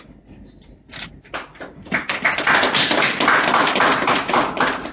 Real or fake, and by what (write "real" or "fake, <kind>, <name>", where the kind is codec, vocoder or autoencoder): real